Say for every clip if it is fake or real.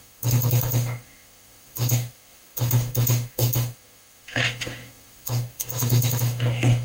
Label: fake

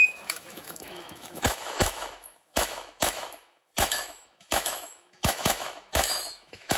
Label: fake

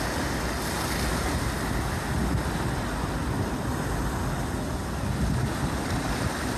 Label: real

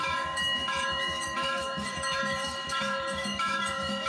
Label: fake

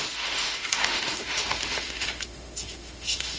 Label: fake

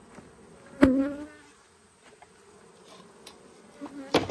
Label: real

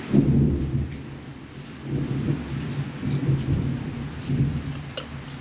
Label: real